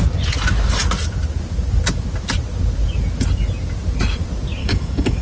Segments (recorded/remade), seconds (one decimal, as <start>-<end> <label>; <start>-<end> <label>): 0.0-4.6 recorded; 4.6-5.2 remade